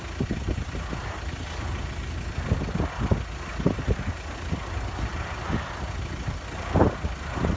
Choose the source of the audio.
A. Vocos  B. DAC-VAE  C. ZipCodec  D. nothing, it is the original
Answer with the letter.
D